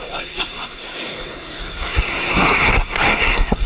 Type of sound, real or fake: fake